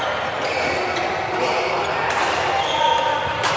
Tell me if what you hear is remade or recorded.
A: recorded